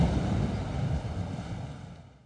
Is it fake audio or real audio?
real